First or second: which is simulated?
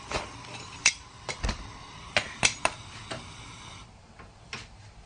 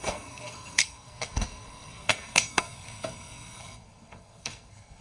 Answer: second